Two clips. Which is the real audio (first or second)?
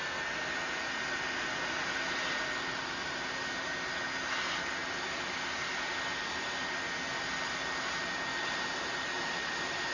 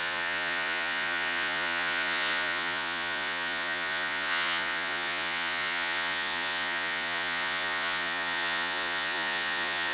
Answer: first